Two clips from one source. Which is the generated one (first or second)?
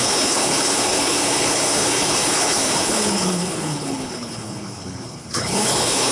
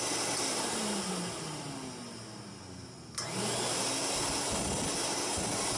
first